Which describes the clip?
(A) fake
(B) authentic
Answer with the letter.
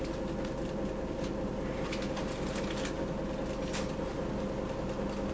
B